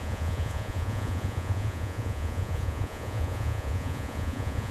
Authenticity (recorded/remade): remade